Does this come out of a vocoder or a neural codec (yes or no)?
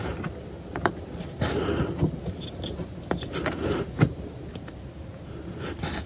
no